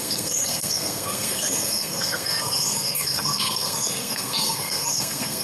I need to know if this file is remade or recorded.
remade